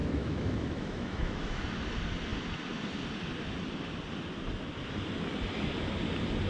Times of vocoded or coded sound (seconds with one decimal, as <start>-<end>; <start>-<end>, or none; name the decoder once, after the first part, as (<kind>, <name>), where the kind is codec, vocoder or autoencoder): 0.0-1.6 (autoencoder, DAC-VAE)